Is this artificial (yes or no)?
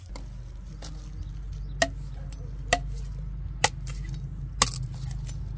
no